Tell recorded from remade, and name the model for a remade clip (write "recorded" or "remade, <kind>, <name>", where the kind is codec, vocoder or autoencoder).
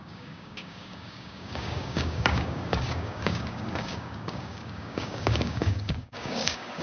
remade, codec, DAC